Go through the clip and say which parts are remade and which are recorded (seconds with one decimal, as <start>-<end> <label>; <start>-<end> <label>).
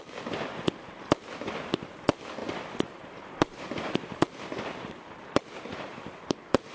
0.0-2.4 recorded; 2.4-4.9 remade; 4.9-5.7 recorded; 5.7-6.7 remade